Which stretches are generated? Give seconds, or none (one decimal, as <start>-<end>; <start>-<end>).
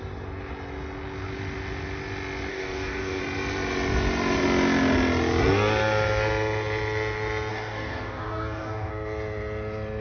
2.5-3.2; 7.5-8.9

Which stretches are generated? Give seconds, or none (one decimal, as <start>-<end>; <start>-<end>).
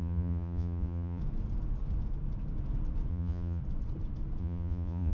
0.0-1.2; 3.1-3.6; 4.4-5.1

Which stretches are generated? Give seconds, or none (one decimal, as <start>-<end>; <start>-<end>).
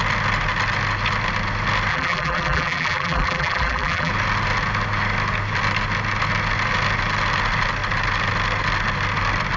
1.9-4.1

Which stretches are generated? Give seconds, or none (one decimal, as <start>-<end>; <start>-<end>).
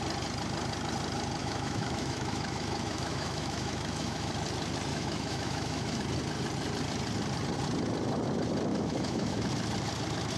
1.4-4.3; 4.9-6.0; 8.7-9.4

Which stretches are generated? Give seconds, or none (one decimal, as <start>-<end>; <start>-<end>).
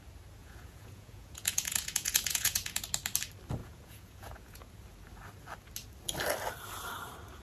0.4-2.8; 3.6-4.7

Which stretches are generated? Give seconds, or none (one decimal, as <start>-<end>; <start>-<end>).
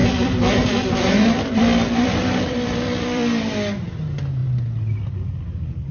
0.0-3.5